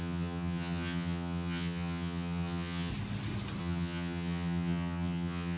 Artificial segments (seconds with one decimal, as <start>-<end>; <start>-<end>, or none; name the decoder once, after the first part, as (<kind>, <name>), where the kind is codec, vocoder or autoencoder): 0.0-2.9 (vocoder, HiFi-GAN); 3.6-5.6